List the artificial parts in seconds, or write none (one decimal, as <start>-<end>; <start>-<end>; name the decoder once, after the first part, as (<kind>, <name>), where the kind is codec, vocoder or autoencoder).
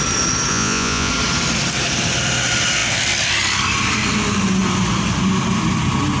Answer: 0.5-1.1 (vocoder, Vocos)